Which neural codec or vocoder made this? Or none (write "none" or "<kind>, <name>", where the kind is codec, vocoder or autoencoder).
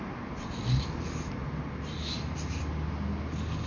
none